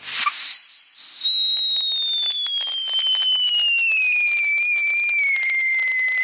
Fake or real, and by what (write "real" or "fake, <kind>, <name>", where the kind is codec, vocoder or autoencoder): real